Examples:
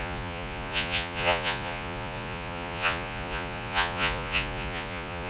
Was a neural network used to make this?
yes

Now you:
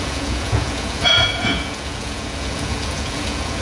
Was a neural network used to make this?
yes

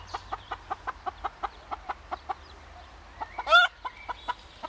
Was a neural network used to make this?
no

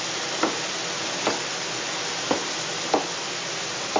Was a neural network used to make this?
no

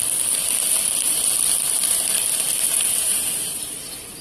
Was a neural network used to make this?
no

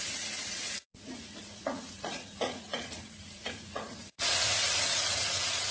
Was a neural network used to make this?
yes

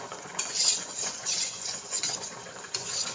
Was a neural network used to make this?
yes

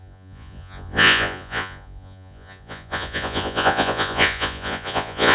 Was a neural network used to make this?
yes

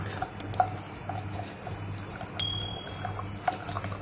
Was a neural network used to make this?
no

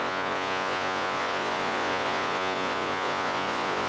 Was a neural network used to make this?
yes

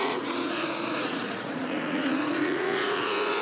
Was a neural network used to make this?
yes